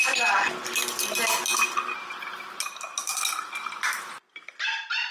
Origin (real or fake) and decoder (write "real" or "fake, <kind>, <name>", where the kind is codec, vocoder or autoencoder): real